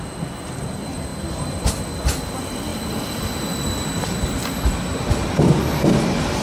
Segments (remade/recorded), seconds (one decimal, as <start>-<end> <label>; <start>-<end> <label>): 0.0-6.4 recorded